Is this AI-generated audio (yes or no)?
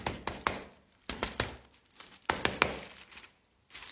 no